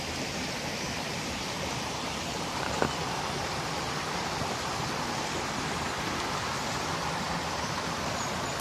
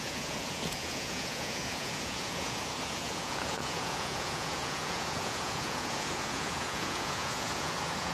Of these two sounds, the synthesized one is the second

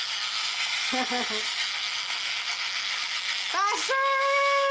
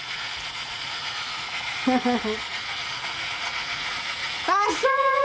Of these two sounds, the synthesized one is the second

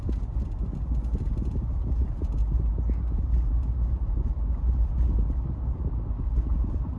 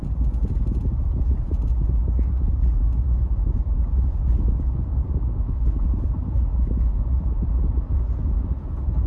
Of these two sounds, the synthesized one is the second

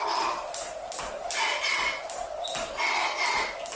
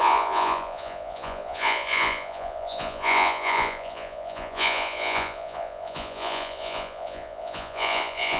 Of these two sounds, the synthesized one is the second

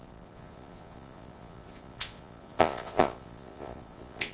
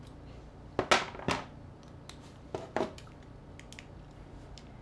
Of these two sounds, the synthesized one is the first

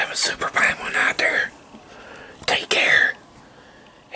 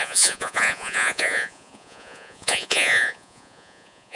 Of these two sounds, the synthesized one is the second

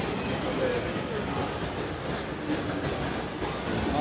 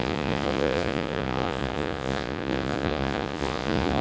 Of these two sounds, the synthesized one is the second